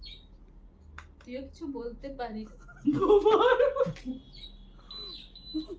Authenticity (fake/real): real